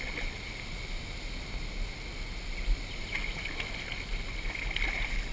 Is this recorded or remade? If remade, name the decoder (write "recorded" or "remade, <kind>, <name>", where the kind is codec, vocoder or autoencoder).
recorded